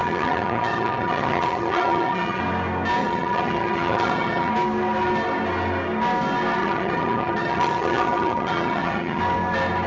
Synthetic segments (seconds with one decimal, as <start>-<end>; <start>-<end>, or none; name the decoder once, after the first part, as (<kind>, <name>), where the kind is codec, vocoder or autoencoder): 0.0-2.4 (vocoder, HiFi-GAN); 3.0-4.5; 6.6-9.2